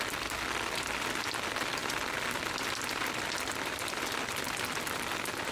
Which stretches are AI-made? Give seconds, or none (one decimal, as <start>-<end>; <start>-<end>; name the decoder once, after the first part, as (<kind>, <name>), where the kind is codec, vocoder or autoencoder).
none